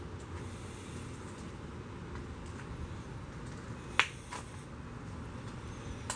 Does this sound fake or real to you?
real